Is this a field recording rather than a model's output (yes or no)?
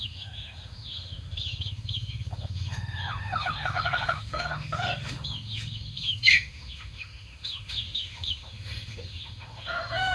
no